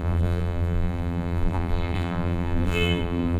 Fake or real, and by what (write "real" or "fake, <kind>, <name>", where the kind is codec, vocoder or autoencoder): fake, vocoder, BigVGAN v2